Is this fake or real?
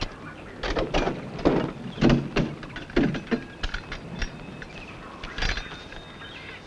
real